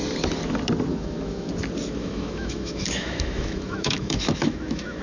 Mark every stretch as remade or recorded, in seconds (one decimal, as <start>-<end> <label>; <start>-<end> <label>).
0.0-0.9 recorded; 0.9-1.5 remade; 1.5-2.0 recorded; 2.0-5.0 remade